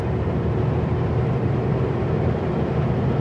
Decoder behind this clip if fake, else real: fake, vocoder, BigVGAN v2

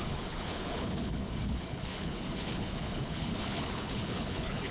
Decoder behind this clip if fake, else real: fake, codec, HILCodec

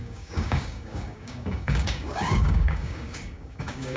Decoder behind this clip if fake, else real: fake, codec, DAC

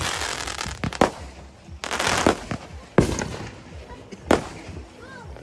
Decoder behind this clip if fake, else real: real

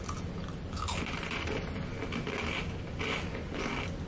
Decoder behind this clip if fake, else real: real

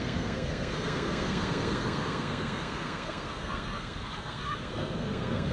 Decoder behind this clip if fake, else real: fake, codec, SNAC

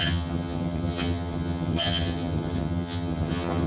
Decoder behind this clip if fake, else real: fake, vocoder, HiFi-GAN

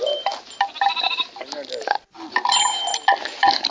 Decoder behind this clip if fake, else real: real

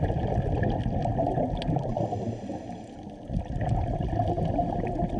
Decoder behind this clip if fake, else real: real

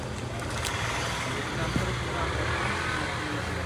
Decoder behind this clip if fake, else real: real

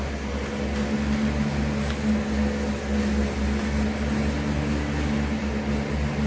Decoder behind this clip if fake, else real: real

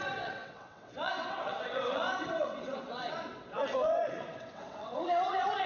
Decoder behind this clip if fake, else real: fake, vocoder, WaveNeXt